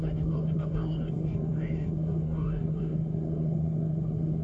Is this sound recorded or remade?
remade